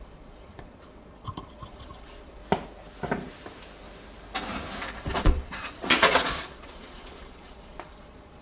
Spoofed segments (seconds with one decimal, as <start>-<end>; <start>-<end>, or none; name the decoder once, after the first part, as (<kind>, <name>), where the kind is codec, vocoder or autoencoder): 0.0-2.4 (vocoder, Vocos); 4.9-8.4